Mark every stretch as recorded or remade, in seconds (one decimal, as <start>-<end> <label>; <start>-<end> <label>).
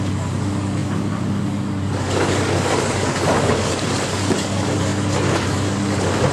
0.0-6.3 remade